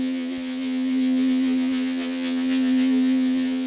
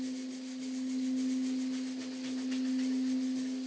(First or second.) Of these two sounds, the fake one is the first